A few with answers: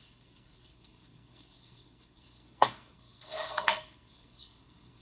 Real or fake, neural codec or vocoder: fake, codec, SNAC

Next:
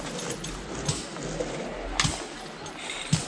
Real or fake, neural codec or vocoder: real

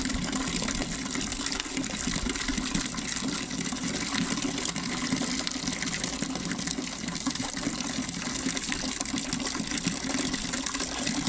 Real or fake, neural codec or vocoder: real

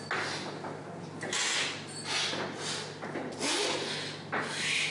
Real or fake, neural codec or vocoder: real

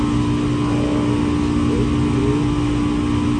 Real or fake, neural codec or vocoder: real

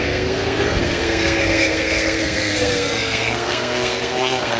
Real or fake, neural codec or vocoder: fake, codec, SNAC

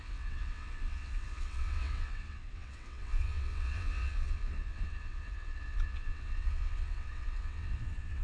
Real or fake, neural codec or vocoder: fake, vocoder, WaveNeXt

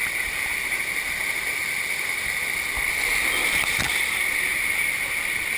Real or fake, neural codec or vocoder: real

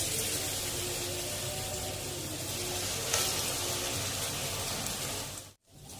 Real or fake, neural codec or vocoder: real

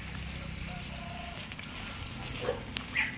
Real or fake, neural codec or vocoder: real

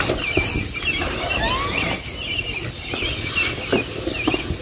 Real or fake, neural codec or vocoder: real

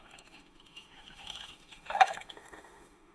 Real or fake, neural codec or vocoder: fake, autoencoder, DAC-VAE